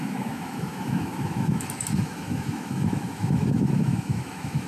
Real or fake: fake